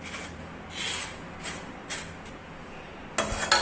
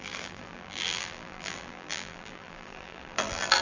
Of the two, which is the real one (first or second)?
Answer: first